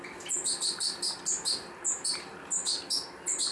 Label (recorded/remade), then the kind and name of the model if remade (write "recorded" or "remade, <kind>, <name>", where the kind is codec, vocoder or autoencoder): recorded